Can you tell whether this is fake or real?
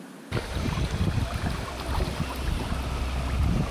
real